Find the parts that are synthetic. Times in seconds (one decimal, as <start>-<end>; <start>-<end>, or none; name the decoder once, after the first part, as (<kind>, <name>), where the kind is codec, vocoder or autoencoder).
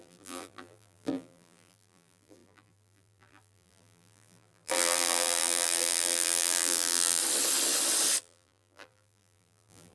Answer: 0.0-7.2 (vocoder, BigVGAN v2); 8.2-9.9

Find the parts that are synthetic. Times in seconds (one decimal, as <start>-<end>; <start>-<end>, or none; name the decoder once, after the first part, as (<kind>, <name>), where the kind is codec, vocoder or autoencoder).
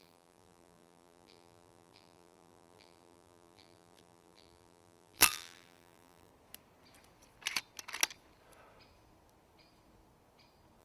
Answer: 0.0-6.3 (vocoder, BigVGAN v2)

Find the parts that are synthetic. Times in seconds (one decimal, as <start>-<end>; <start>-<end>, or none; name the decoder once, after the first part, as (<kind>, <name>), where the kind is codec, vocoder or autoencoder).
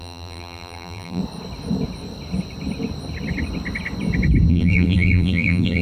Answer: 0.0-1.2 (vocoder, BigVGAN v2); 4.5-5.8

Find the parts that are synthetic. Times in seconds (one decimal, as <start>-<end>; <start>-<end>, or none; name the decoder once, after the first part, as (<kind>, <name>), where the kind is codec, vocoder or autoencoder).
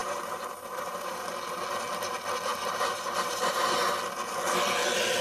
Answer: 0.0-1.3 (vocoder, BigVGAN v2); 2.5-3.9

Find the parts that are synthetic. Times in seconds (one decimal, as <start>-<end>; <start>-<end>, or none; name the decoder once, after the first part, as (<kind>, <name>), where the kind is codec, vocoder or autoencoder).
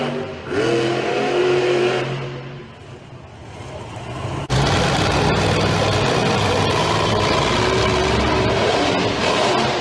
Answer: 1.1-2.6 (vocoder, BigVGAN v2); 3.4-4.0; 6.2-7.1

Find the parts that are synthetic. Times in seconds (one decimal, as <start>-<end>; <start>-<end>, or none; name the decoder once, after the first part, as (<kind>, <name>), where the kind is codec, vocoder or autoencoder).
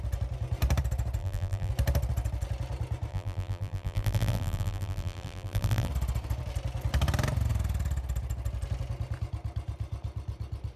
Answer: 1.2-1.7 (vocoder, BigVGAN v2); 3.1-5.9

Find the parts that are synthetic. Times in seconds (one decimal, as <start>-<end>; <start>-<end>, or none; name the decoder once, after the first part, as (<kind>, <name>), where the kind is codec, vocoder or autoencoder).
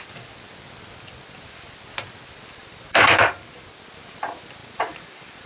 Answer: 2.6-3.7 (vocoder, BigVGAN v2); 4.6-5.5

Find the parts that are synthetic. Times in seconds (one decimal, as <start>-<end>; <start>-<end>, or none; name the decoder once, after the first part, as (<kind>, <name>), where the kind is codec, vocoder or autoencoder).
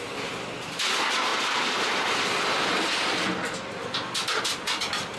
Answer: 1.3-4.4 (vocoder, BigVGAN v2)